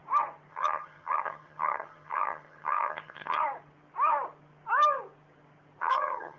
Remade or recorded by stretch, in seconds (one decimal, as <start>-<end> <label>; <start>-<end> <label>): 0.0-0.5 recorded; 0.5-3.4 remade; 3.4-5.8 recorded; 5.8-6.4 remade